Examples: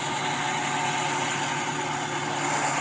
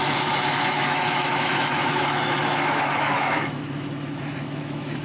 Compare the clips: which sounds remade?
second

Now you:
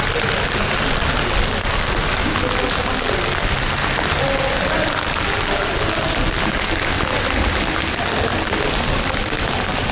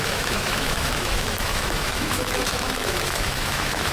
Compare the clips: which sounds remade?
second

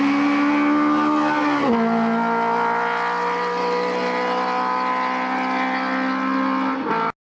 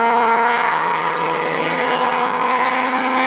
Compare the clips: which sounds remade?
second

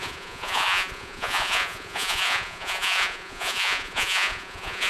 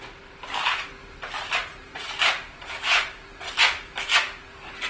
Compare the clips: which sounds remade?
first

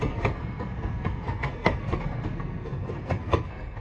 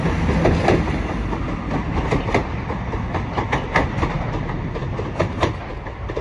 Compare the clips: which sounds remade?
first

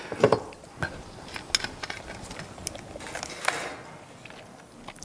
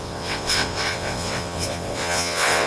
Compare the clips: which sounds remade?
second